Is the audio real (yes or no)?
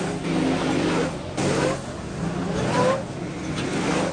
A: yes